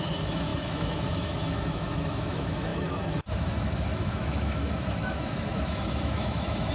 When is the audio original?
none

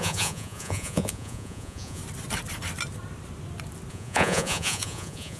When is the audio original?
2.0-3.9

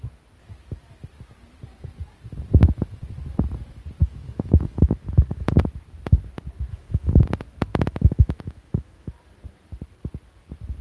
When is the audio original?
0.0-4.0; 5.6-6.7; 7.2-7.7; 9.1-10.8

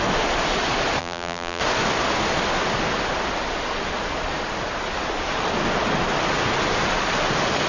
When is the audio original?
0.0-1.0; 1.6-7.7

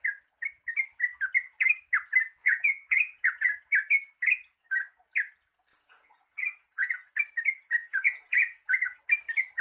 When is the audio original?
0.0-2.4; 3.6-5.7; 7.1-7.8; 9.0-9.6

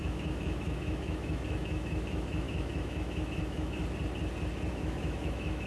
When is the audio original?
3.8-4.7